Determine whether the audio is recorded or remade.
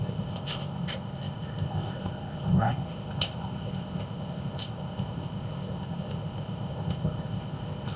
remade